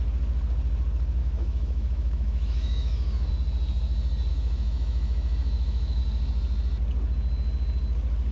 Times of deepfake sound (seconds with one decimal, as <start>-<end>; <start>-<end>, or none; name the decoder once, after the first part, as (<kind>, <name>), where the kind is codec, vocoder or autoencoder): 1.2-3.3 (autoencoder, DAC-VAE); 4.3-6.0